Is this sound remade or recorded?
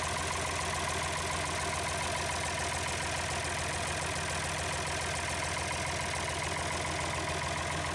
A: recorded